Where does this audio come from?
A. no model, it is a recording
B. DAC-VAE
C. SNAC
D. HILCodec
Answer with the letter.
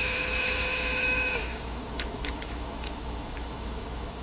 B